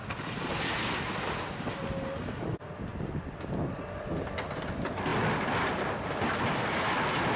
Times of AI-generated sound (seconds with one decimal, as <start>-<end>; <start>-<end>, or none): none